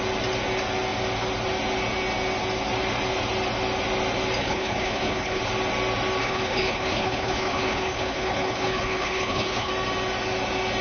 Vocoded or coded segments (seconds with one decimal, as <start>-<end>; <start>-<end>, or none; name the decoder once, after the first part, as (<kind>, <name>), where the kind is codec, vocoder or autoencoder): 4.4-5.4 (codec, HILCodec); 6.2-9.7